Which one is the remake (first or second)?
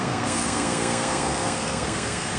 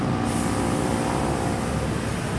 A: first